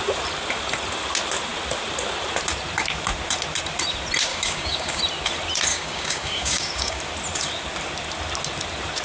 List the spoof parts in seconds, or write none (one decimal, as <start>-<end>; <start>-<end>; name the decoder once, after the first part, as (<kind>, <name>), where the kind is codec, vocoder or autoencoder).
4.3-5.0 (codec, DAC); 5.7-7.0